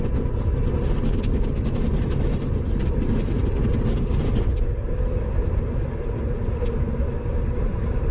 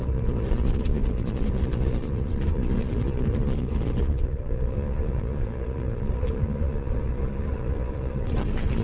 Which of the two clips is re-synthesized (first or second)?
second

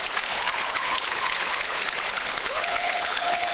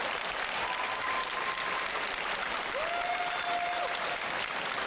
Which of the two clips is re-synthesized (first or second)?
first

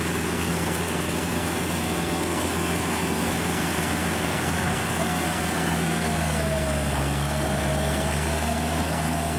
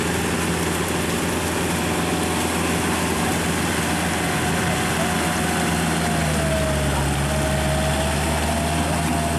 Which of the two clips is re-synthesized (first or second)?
first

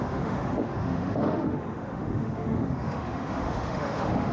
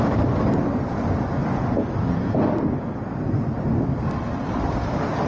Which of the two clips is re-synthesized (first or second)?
first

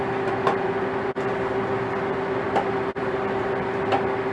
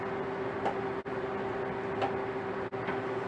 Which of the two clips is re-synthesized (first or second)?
first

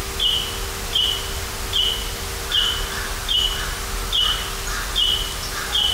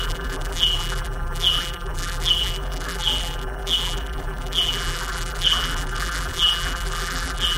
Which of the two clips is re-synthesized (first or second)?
second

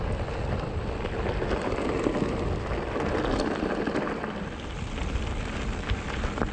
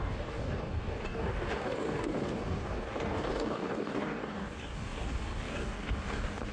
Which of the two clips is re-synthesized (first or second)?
second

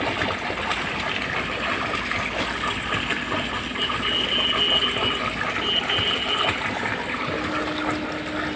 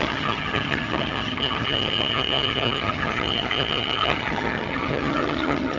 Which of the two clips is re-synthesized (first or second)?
second